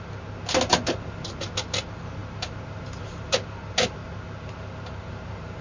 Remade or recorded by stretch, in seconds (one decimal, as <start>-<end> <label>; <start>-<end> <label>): 0.0-5.0 recorded; 5.0-5.6 remade